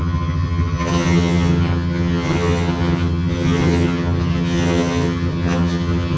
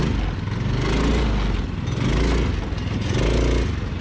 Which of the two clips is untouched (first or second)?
second